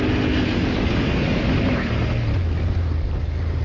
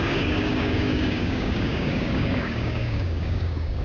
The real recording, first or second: first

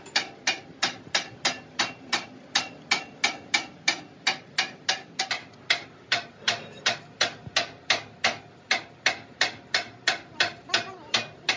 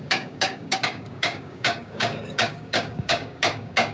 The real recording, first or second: first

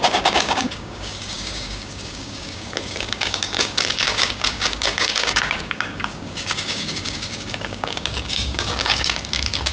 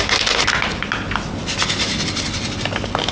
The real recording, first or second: second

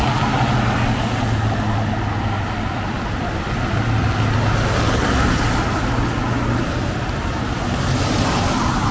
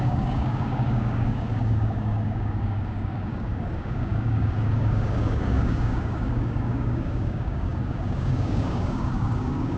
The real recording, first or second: first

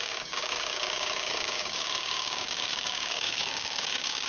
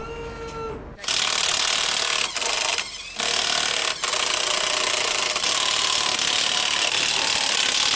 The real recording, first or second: second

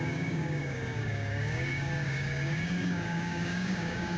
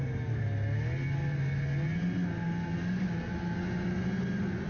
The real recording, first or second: second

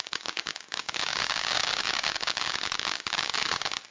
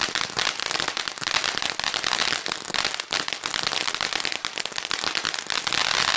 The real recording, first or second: second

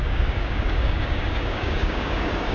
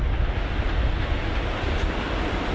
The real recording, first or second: second